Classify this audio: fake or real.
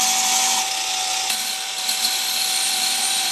real